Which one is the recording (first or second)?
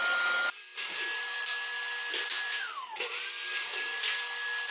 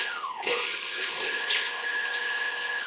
first